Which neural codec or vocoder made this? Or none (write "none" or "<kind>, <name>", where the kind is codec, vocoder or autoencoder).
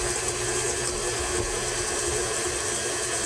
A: none